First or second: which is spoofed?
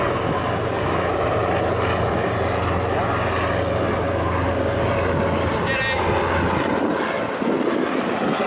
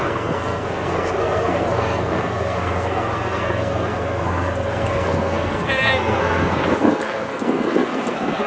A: second